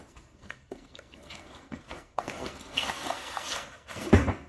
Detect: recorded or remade remade